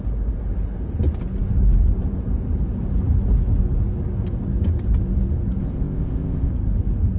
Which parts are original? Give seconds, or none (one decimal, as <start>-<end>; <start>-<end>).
0.0-5.6; 6.5-7.2